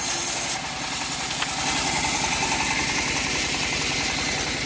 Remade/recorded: recorded